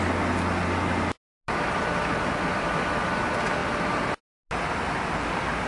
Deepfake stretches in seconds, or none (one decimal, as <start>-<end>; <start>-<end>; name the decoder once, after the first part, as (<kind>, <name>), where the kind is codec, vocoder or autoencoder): none